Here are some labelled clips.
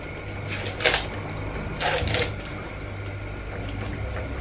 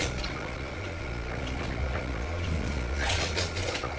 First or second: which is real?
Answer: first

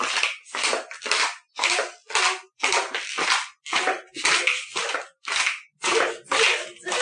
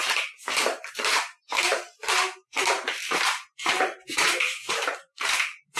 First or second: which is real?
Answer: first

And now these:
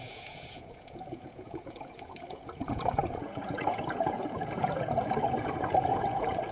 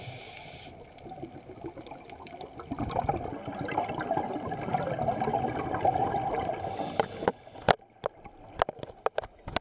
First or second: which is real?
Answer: second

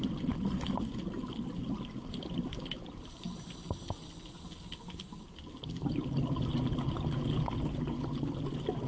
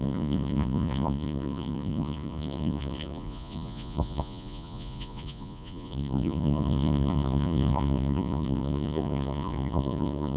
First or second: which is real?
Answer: first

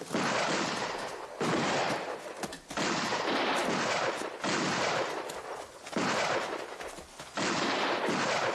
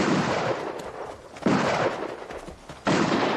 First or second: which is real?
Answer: first